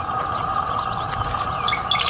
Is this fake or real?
real